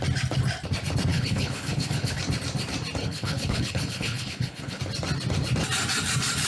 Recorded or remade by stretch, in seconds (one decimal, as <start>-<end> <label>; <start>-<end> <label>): 0.0-1.1 recorded; 1.1-2.2 remade; 2.2-3.0 recorded; 3.0-4.8 remade; 4.8-6.5 recorded